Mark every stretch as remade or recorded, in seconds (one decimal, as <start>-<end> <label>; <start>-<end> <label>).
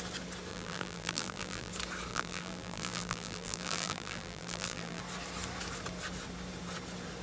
0.0-0.5 recorded; 0.5-1.7 remade; 1.7-2.1 recorded; 2.1-5.0 remade; 5.0-7.2 recorded